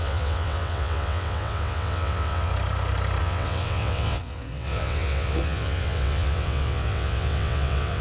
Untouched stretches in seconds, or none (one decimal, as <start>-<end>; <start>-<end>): 2.5-3.2